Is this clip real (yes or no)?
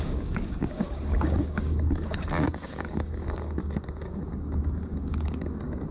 no